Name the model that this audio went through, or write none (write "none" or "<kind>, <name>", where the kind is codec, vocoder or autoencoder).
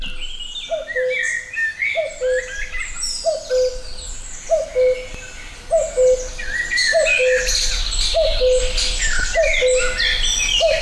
none